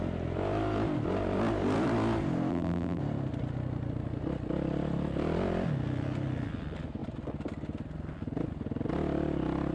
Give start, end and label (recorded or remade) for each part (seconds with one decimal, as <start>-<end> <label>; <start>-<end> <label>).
0.0-2.5 recorded; 2.5-3.0 remade; 3.0-9.7 recorded